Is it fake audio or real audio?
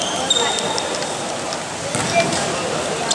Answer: real